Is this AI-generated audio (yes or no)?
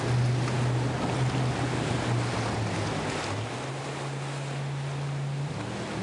no